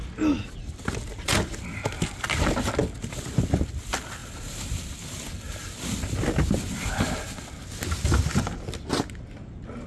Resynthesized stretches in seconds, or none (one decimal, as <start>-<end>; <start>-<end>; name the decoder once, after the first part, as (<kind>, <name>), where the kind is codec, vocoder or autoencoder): 4.2-5.9 (vocoder, BigVGAN v2)